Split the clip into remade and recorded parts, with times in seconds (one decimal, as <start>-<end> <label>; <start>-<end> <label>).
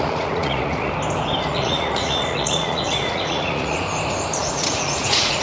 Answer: 0.0-0.9 remade; 0.9-1.5 recorded; 1.5-3.8 remade; 3.8-4.4 recorded; 4.4-5.4 remade